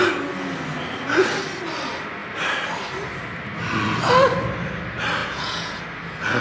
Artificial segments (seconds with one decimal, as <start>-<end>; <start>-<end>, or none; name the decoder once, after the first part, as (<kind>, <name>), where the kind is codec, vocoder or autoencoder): 5.2-5.8 (vocoder, Vocos)